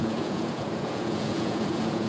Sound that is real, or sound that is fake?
fake